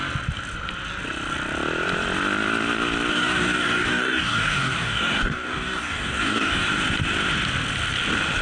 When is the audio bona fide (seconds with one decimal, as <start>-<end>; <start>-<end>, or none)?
0.0-3.1; 6.7-8.4